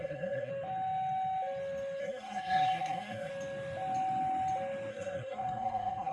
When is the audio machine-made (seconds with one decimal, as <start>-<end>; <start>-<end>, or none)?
0.0-0.5; 2.0-3.3; 4.9-6.1